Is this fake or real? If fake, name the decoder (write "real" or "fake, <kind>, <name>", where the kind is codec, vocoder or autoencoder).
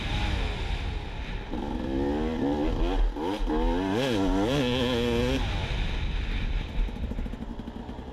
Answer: real